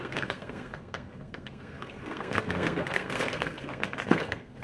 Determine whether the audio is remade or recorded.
remade